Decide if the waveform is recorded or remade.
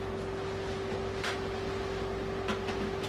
recorded